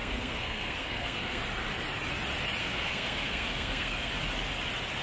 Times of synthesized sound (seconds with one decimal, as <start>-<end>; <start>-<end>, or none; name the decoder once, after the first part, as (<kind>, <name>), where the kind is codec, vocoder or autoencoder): 0.0-1.4 (codec, SNAC); 2.6-4.1